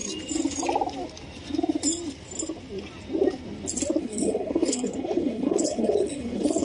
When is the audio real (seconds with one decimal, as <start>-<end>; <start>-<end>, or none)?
0.0-4.0